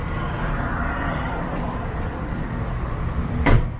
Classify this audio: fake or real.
fake